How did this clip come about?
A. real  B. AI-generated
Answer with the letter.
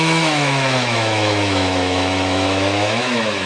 B